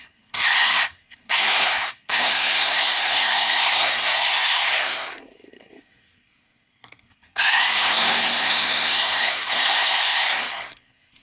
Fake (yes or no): yes